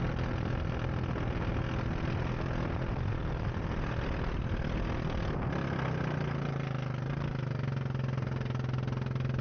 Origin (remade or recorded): recorded